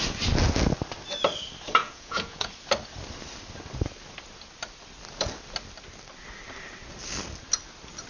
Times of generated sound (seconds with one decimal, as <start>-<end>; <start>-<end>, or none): 1.8-2.5